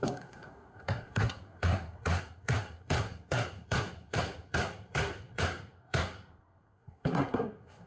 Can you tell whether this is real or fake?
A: fake